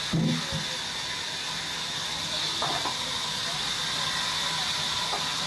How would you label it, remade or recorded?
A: recorded